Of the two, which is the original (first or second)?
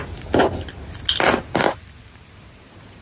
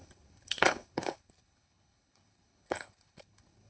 first